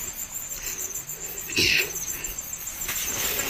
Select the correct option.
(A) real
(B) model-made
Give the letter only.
A